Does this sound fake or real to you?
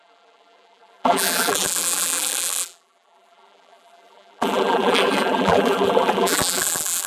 fake